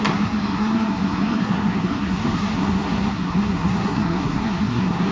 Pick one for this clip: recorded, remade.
remade